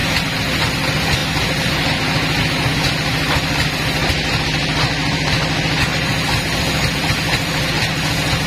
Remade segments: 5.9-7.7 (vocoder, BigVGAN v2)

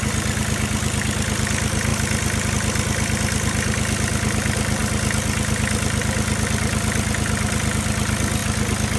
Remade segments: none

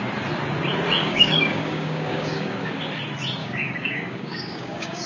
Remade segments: 1.0-2.7 (codec, DAC); 3.4-5.1

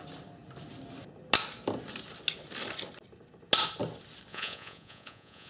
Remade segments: 4.3-5.5 (vocoder, Vocos)

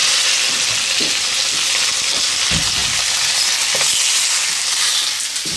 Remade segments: none